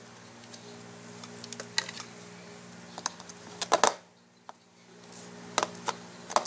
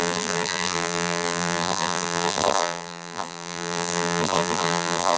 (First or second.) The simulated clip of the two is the second